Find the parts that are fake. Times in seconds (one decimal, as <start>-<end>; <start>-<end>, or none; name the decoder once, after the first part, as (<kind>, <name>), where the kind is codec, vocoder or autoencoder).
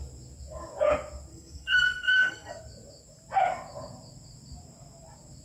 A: 1.3-2.5 (codec, SNAC)